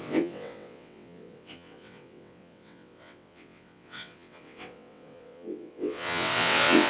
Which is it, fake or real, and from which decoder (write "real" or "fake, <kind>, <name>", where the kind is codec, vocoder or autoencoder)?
fake, vocoder, WaveNeXt